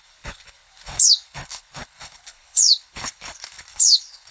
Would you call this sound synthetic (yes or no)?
yes